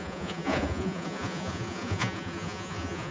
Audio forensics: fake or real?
fake